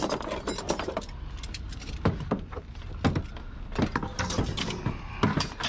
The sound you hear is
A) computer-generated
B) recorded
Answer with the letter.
B